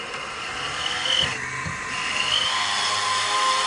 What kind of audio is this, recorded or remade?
recorded